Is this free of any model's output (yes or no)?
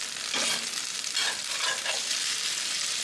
yes